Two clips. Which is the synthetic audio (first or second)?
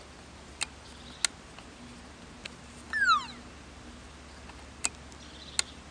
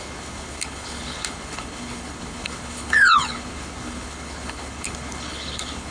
second